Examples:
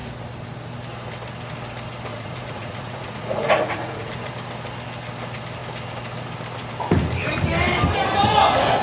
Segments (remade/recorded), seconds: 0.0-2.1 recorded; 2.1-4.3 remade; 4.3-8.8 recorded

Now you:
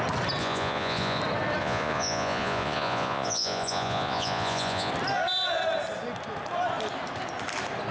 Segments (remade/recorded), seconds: 0.0-0.4 recorded; 0.4-1.2 remade; 1.2-1.6 recorded; 1.6-4.9 remade; 4.9-7.9 recorded

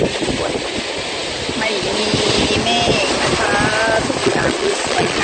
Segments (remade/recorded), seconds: 0.0-4.2 recorded; 4.2-5.2 remade

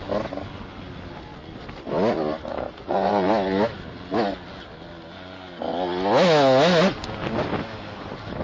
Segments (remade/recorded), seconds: 0.0-2.5 recorded; 2.5-3.3 remade; 3.3-8.4 recorded